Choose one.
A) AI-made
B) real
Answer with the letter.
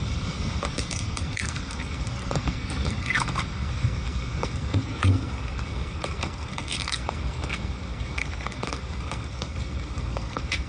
A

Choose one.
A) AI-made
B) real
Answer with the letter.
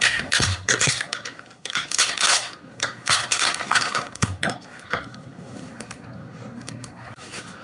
A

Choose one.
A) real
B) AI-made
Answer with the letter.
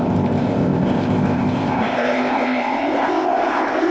B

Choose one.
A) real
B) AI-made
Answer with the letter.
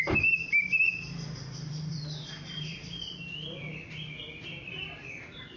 B